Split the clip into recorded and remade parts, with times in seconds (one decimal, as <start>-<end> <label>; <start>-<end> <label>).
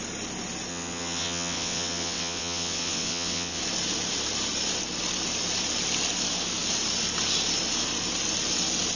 0.0-0.7 recorded; 0.7-3.6 remade; 3.6-9.0 recorded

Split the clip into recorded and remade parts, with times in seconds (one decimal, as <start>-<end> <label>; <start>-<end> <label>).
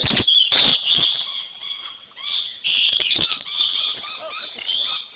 0.0-0.7 recorded; 0.7-3.8 remade; 3.8-5.2 recorded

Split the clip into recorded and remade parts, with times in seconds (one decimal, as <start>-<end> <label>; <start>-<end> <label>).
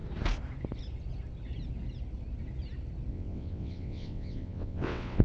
0.0-3.1 recorded; 3.1-5.2 remade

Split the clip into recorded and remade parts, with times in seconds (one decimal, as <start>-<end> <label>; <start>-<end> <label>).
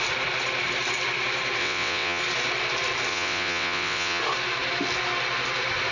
0.0-1.6 recorded; 1.6-2.2 remade; 2.2-3.1 recorded; 3.1-4.2 remade; 4.2-5.9 recorded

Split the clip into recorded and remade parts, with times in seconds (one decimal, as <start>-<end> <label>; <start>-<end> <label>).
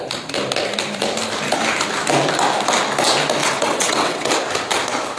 0.0-3.4 recorded; 3.4-4.3 remade; 4.3-5.2 recorded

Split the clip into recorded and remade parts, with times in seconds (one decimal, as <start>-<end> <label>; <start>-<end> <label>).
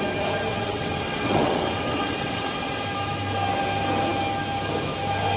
0.0-0.5 recorded; 0.5-2.8 remade; 2.8-5.4 recorded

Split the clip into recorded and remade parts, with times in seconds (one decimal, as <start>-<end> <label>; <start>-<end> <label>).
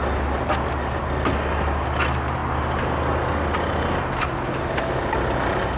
0.0-5.8 recorded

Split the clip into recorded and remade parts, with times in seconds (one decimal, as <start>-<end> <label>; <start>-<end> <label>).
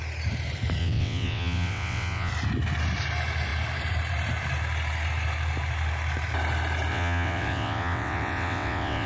0.0-0.8 recorded; 0.8-2.3 remade; 2.3-6.9 recorded; 6.9-9.1 remade